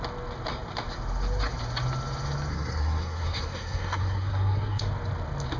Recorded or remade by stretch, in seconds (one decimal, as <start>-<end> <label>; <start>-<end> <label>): 0.0-2.5 recorded; 2.5-4.8 remade; 4.8-5.6 recorded